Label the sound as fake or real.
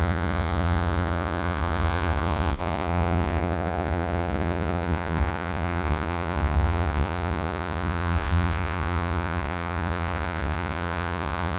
fake